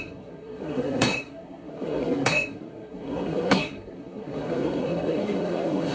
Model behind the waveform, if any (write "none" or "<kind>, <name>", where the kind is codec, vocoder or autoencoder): codec, SNAC